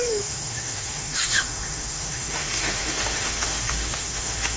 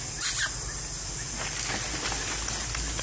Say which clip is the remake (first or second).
first